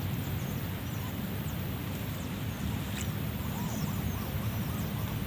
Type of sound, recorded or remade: remade